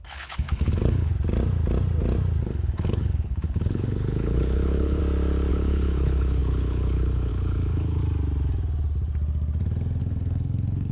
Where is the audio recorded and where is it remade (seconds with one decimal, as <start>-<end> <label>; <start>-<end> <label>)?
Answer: 0.0-1.1 remade; 1.1-2.4 recorded; 2.4-5.0 remade; 5.0-5.5 recorded; 5.5-8.0 remade; 8.0-10.0 recorded; 10.0-10.9 remade